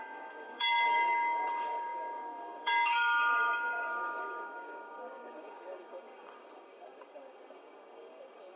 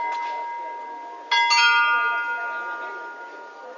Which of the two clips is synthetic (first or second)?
first